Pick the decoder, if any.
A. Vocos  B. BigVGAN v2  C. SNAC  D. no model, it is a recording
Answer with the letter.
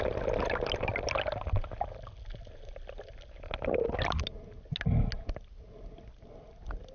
D